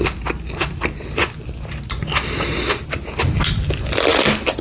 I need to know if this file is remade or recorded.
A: recorded